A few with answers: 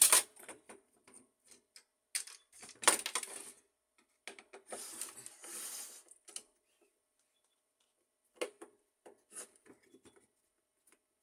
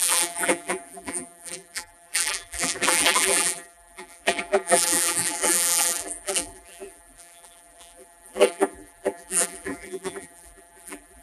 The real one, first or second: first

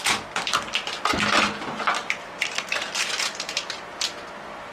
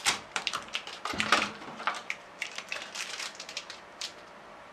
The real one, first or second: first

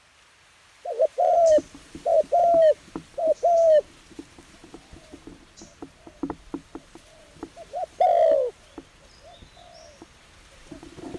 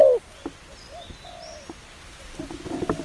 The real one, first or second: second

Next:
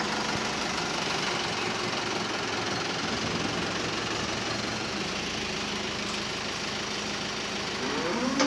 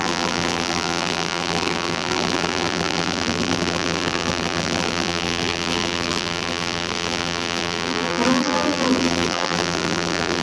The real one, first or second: first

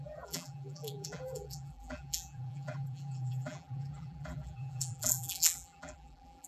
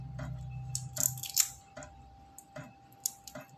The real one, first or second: second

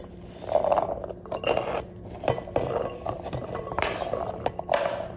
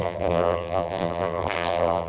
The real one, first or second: first